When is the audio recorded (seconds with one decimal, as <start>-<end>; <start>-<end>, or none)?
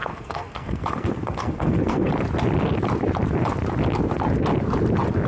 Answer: 2.1-5.3